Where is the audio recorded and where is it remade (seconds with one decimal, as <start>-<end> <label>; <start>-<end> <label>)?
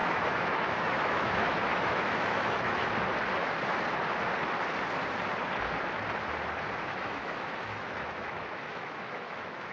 0.0-2.8 remade; 2.8-6.8 recorded; 6.8-9.7 remade